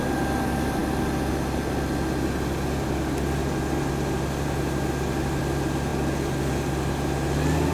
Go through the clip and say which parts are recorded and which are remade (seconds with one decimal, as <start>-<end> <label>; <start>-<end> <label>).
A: 0.0-7.7 recorded